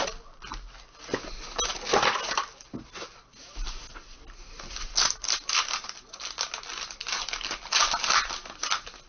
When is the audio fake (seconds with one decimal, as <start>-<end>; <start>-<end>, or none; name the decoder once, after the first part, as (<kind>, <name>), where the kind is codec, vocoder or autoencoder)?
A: none